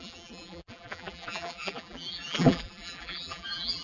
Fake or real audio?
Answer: fake